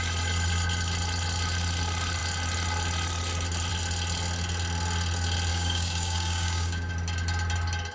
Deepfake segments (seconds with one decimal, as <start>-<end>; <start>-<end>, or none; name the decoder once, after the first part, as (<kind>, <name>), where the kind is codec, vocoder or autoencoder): 5.5-6.9 (codec, DAC)